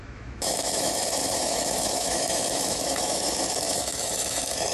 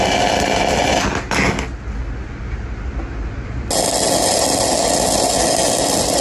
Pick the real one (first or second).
second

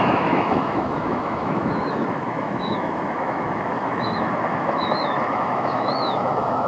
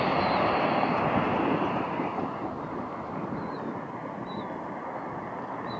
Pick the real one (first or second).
second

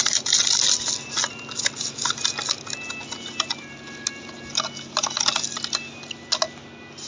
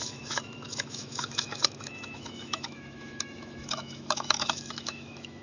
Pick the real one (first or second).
first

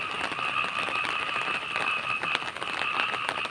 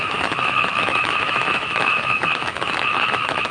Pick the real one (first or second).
first